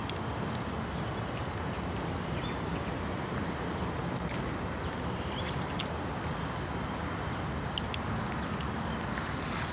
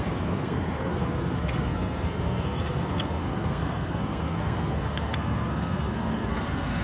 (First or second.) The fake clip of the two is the second